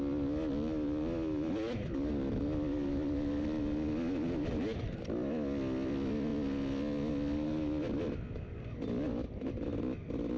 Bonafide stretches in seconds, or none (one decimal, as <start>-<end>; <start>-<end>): 0.0-10.4